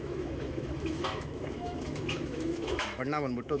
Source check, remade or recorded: remade